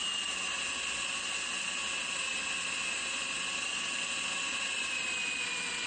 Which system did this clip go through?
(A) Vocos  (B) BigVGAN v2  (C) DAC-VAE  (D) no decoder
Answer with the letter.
D